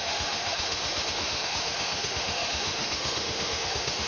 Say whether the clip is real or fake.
fake